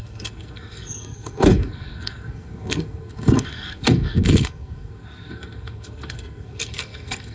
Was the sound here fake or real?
fake